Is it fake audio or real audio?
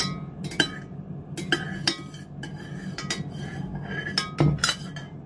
real